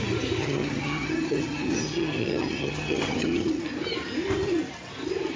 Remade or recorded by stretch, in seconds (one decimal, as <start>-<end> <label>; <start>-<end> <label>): 0.0-0.4 recorded; 0.4-3.6 remade; 3.6-5.4 recorded